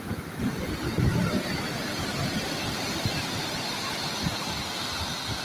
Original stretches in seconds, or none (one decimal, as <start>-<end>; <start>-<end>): 0.0-2.2; 3.8-5.4

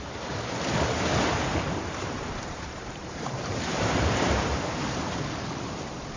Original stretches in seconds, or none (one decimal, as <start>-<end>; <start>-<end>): 0.0-1.5; 5.2-6.2

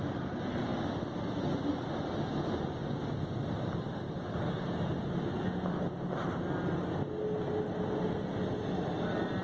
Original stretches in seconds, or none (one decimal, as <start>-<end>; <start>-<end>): 0.0-9.4

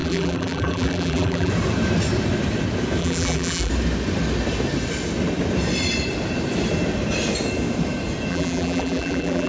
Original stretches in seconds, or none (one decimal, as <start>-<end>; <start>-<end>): 1.5-3.0; 3.7-8.3

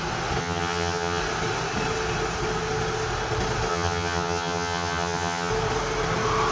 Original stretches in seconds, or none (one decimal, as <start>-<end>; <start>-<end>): 0.0-0.4; 1.2-3.7; 5.5-6.5